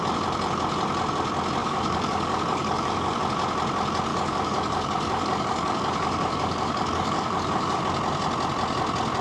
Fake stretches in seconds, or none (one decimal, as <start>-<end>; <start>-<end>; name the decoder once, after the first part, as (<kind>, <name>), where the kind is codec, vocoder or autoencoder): 1.6-3.2 (codec, DAC); 4.1-7.8